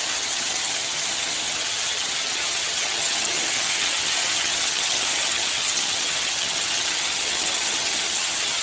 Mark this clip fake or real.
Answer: fake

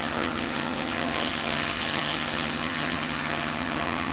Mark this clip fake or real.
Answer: fake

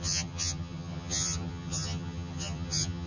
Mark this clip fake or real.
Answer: fake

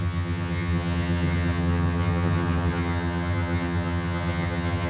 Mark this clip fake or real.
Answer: fake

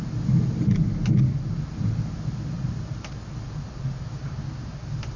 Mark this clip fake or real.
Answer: real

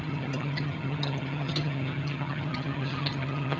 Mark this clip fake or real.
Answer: fake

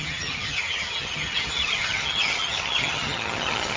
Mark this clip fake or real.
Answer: fake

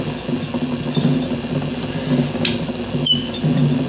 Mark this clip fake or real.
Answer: real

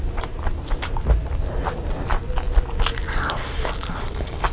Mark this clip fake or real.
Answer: real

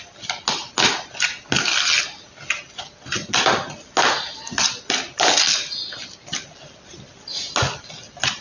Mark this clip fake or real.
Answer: real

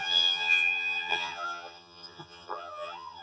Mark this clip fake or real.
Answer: fake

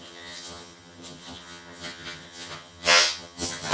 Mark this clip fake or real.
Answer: fake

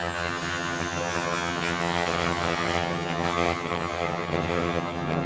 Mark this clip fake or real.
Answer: fake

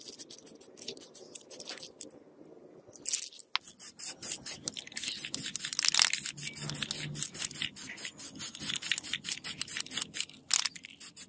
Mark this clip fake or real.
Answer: real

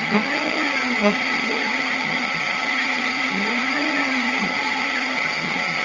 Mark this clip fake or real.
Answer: fake